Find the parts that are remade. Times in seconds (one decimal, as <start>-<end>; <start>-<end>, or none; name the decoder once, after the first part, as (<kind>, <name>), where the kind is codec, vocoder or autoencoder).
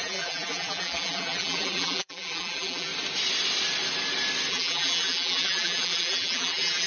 0.0-2.9 (vocoder, BigVGAN v2); 4.5-6.9